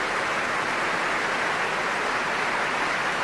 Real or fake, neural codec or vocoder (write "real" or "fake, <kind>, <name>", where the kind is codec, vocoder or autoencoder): real